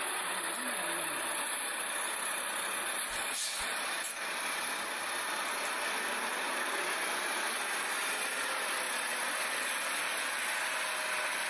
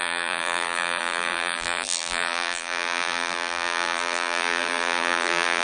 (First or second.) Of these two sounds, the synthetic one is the second